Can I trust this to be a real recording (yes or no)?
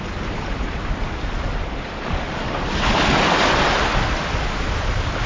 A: yes